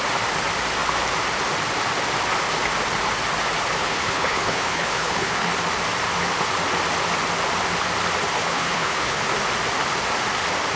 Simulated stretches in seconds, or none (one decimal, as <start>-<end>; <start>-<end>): 3.8-5.5; 8.4-9.2